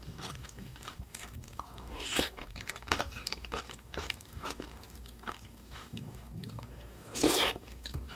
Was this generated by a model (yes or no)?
yes